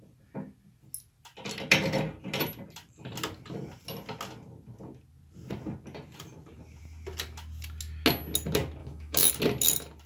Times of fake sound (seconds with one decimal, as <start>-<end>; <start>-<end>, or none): 8.8-9.3